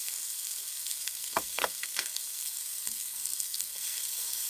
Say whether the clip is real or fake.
fake